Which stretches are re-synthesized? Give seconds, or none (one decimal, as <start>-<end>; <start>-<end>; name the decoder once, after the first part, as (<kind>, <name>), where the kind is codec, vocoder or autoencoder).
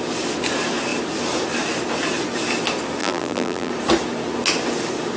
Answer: 3.0-3.7 (vocoder, BigVGAN v2)